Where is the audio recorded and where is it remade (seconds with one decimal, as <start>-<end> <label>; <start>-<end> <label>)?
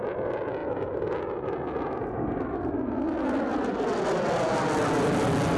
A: 0.0-5.6 recorded